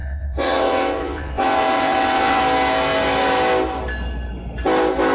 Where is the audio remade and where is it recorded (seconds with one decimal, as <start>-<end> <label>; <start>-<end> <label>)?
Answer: 0.0-2.4 remade; 2.4-5.1 recorded